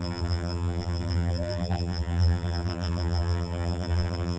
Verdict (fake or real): fake